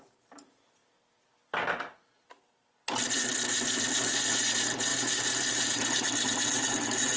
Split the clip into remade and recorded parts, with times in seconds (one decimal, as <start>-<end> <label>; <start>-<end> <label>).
0.0-0.8 remade; 0.8-4.3 recorded; 4.3-7.2 remade